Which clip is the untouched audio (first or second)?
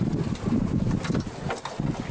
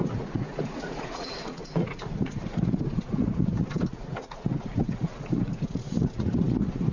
first